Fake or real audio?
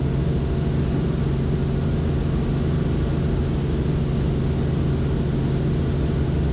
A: real